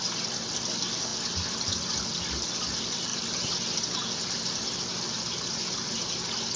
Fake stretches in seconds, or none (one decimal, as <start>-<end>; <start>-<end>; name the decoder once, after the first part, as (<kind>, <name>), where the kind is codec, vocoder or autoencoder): none